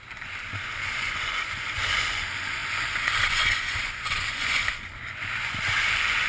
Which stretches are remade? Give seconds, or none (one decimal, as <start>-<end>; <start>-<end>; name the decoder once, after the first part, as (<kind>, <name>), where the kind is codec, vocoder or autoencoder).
0.0-6.3 (vocoder, Vocos)